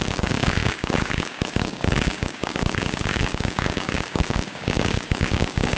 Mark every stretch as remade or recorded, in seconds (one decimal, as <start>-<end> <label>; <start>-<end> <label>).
0.0-5.8 remade